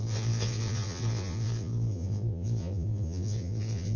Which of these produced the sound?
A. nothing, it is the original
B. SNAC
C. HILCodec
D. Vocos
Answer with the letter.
D